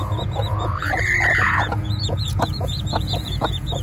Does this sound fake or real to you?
fake